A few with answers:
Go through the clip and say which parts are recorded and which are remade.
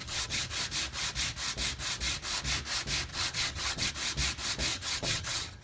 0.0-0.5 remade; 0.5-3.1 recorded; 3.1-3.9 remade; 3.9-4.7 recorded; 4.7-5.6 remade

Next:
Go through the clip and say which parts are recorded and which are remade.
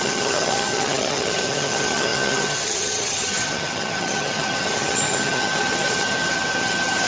0.0-7.1 remade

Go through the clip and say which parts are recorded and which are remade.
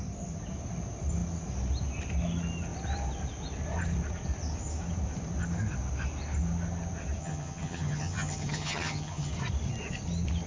0.0-7.2 recorded; 7.2-9.3 remade; 9.3-10.5 recorded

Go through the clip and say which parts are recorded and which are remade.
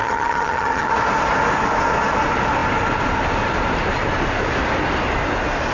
0.0-0.9 remade; 0.9-5.7 recorded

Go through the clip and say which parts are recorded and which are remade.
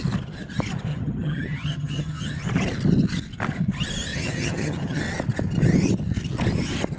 0.0-0.9 recorded; 0.9-2.4 remade; 2.4-4.1 recorded; 4.1-5.0 remade; 5.0-7.0 recorded